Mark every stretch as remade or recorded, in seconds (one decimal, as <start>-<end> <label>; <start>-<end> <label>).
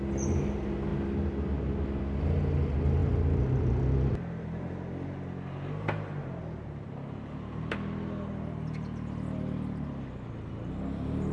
0.0-11.3 recorded